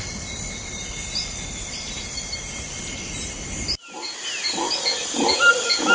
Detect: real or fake real